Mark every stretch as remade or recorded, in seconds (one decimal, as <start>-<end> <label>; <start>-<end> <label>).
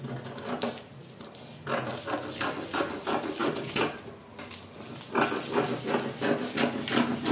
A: 0.0-7.3 recorded